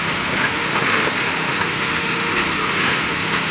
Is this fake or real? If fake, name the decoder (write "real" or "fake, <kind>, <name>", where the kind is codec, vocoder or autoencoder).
fake, autoencoder, DAC-VAE